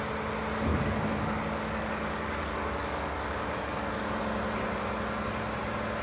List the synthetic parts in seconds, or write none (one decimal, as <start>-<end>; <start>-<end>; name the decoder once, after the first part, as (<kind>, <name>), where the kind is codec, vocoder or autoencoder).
0.7-4.2 (codec, DAC)